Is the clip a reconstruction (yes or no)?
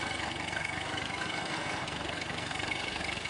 yes